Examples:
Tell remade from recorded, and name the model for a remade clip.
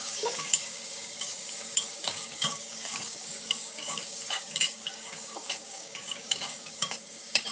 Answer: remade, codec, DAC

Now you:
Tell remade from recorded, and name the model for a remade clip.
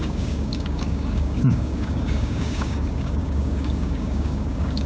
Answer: remade, codec, DAC